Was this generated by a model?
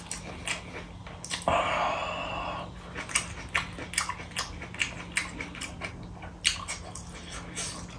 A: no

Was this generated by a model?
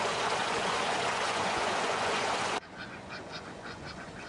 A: yes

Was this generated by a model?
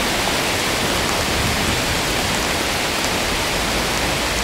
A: no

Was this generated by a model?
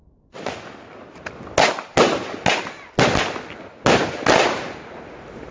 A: no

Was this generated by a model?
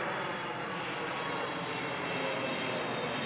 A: no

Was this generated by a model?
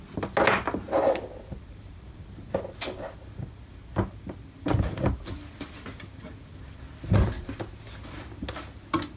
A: no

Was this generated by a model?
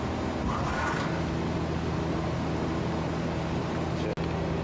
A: no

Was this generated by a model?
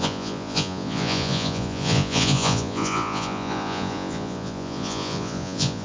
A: yes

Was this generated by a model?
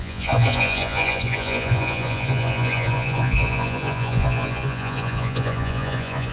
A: yes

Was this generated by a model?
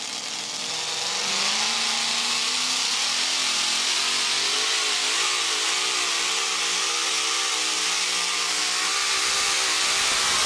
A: no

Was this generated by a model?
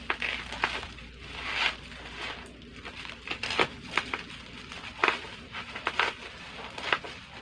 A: no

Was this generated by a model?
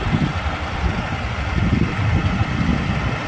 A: no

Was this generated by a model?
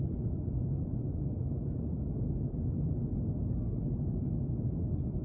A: no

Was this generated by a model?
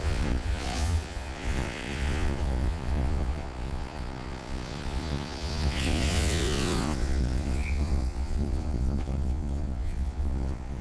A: yes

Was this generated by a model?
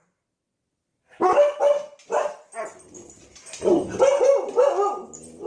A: no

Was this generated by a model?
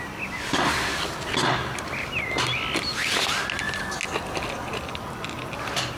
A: no